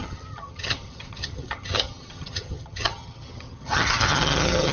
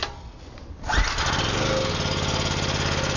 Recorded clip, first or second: second